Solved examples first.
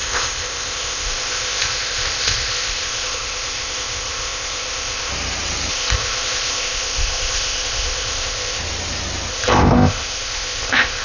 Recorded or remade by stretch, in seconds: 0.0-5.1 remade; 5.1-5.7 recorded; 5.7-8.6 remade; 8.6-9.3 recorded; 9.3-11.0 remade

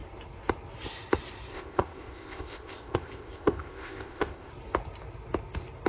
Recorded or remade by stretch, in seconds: 0.0-1.5 recorded; 1.5-4.5 remade; 4.5-5.9 recorded

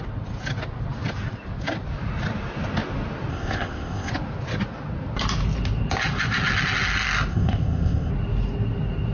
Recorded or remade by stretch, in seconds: 0.0-3.3 recorded; 3.3-4.1 remade; 4.1-7.3 recorded; 7.3-8.1 remade; 8.1-9.1 recorded

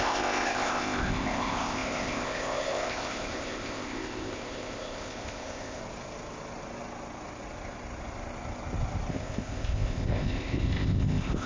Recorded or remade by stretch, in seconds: 0.0-5.8 remade; 5.8-9.1 recorded; 9.1-11.5 remade